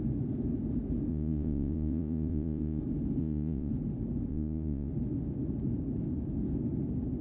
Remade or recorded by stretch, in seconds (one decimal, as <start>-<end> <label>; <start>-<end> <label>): 0.0-1.1 recorded; 1.1-2.8 remade; 2.8-3.2 recorded; 3.2-3.7 remade; 3.7-4.3 recorded; 4.3-4.9 remade; 4.9-7.2 recorded